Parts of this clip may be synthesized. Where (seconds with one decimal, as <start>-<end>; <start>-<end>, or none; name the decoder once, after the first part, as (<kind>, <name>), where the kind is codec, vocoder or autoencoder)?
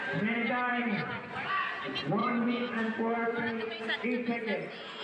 0.7-1.5 (vocoder, Vocos); 2.2-3.8